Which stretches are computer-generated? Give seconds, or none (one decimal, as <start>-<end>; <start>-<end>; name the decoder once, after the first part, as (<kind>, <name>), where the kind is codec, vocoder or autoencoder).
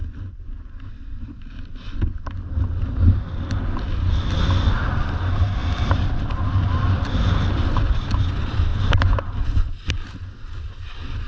none